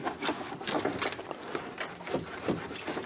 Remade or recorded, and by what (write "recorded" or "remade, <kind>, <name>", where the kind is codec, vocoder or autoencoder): recorded